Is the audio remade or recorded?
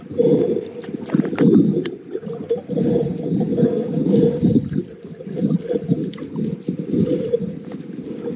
recorded